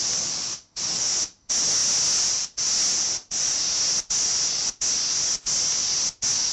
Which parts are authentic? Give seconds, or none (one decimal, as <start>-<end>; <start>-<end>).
0.0-6.5